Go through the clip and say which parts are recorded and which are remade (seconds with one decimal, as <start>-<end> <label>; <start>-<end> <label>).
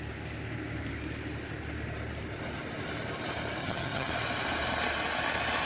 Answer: 0.0-3.6 recorded; 3.6-4.1 remade; 4.1-5.7 recorded